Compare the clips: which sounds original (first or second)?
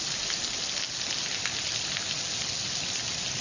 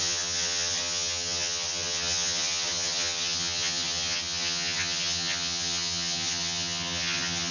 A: first